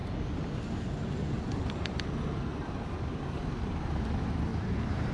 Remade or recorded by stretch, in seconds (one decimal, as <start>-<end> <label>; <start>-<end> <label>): 0.0-4.5 recorded; 4.5-5.1 remade